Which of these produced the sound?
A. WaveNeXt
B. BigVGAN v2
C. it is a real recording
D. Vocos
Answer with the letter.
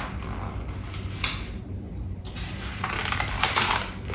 C